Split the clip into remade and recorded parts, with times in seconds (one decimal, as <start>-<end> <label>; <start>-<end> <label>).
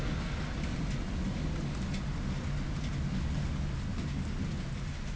0.0-5.2 recorded